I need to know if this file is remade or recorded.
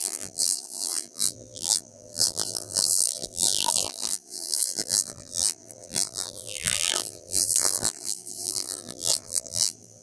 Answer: remade